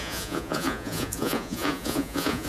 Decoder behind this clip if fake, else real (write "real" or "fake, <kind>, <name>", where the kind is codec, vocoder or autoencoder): fake, vocoder, Vocos